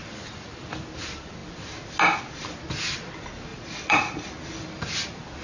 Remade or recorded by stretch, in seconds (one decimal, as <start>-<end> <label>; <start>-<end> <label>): 0.0-3.5 recorded; 3.5-4.3 remade; 4.3-5.4 recorded